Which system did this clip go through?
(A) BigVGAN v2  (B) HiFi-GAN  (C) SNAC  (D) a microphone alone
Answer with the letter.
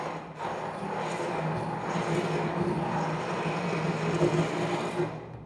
D